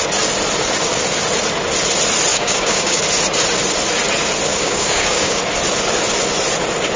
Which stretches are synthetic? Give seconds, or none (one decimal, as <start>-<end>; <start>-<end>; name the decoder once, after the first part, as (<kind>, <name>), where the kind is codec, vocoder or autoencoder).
2.3-3.0 (codec, DAC); 4.5-5.4